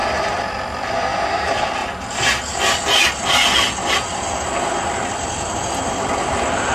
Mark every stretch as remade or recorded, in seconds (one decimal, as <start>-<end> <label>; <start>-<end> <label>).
0.0-0.9 recorded; 0.9-1.8 remade; 1.8-4.6 recorded; 4.6-6.7 remade